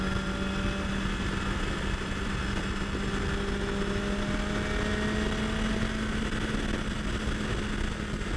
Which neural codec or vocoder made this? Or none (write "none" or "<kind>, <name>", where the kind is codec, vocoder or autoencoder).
none